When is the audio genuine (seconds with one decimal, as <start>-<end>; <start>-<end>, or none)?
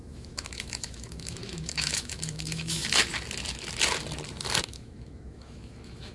2.8-4.6